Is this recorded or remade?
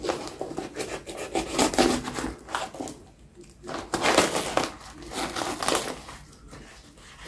recorded